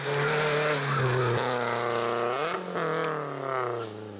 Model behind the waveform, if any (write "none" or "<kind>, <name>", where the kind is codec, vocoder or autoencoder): none